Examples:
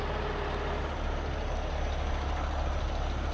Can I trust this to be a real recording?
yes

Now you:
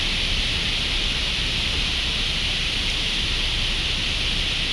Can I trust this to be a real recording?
yes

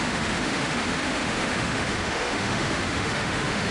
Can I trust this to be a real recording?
no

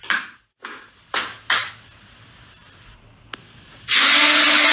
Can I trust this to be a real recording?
yes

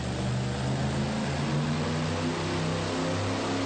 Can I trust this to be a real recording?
yes